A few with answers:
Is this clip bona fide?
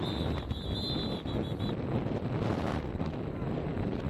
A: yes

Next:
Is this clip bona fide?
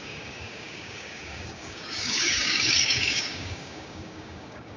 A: no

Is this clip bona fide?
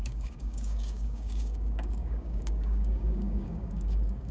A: no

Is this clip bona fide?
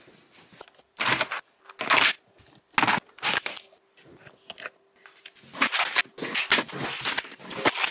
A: yes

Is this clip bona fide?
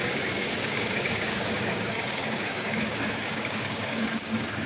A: no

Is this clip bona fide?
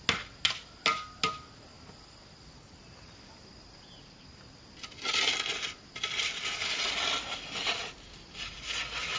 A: yes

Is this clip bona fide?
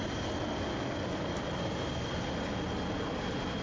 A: yes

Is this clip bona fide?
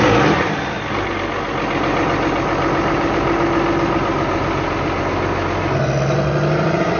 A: yes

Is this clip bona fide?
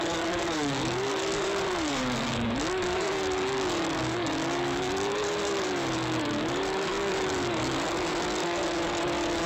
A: no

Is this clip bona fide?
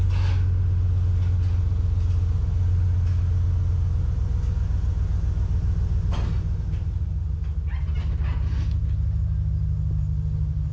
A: yes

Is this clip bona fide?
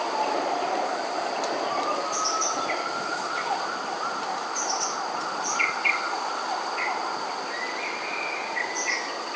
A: yes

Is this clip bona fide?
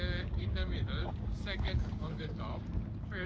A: no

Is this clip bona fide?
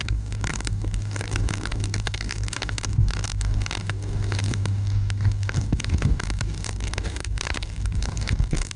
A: no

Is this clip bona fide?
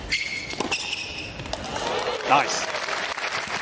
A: yes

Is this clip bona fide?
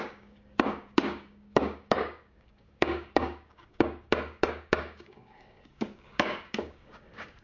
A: no